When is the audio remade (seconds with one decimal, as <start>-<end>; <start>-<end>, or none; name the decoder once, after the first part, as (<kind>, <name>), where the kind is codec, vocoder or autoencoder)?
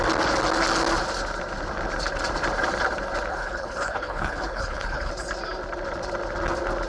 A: 3.3-5.1 (codec, HILCodec)